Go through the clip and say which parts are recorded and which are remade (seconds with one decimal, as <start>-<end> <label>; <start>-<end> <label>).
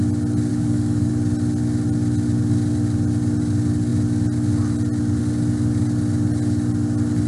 0.0-0.5 recorded; 0.5-1.1 remade; 1.1-7.3 recorded